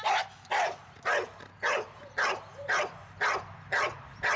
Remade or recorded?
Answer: recorded